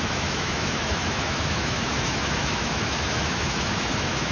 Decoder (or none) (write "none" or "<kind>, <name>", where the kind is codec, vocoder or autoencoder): autoencoder, DAC-VAE